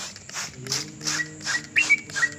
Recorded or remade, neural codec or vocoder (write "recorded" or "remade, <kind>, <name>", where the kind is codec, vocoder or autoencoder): recorded